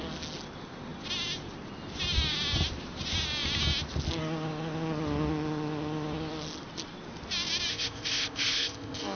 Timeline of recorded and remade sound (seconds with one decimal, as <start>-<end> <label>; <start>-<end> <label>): 0.0-7.7 recorded; 7.7-9.2 remade